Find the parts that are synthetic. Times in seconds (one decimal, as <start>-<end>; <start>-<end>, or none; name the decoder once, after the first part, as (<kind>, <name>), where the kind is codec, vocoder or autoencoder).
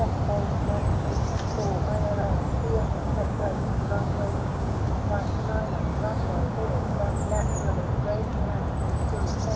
3.0-4.8 (codec, DAC); 5.9-7.1